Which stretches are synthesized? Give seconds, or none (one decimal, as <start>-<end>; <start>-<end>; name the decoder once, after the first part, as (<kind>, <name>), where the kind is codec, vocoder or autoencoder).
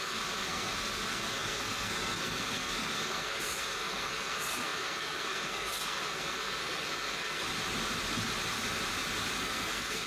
0.0-7.5 (codec, SNAC); 9.4-10.1